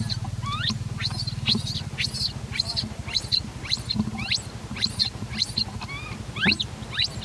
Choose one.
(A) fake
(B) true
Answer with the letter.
B